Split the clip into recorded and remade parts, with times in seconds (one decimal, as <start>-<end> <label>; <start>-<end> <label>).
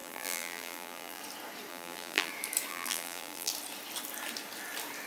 0.0-1.2 remade; 1.2-1.7 recorded; 1.7-2.3 remade; 2.3-2.7 recorded; 2.7-3.5 remade; 3.5-5.1 recorded